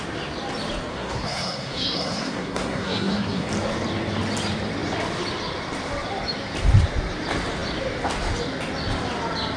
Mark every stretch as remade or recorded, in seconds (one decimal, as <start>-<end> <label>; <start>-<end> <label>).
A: 0.0-0.9 recorded; 0.9-3.5 remade; 3.5-9.6 recorded